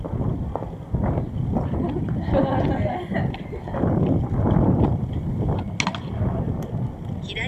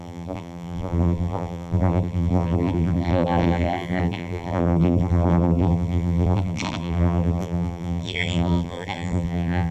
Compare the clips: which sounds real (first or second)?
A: first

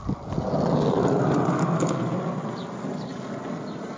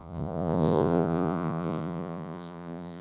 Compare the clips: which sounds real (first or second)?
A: first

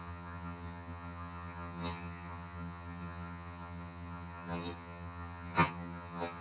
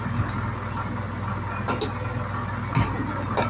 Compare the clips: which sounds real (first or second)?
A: second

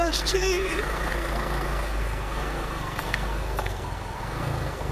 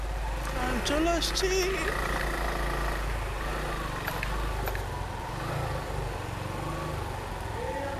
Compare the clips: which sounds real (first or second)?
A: second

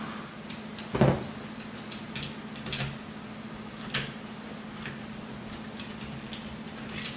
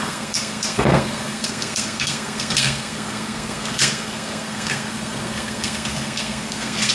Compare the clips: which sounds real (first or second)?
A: first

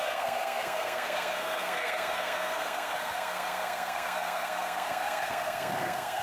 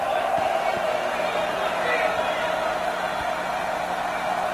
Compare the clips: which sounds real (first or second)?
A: second